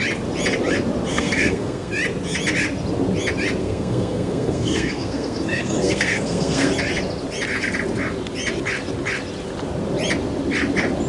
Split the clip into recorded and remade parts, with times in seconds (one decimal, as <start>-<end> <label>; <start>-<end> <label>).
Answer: 0.0-1.1 recorded; 1.1-1.9 remade; 1.9-3.6 recorded; 3.6-6.7 remade; 6.7-11.1 recorded